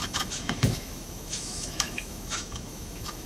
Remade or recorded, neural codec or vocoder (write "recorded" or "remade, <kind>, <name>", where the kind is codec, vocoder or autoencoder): remade, autoencoder, DAC-VAE